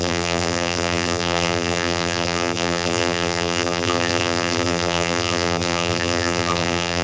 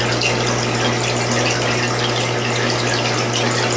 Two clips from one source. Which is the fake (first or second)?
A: first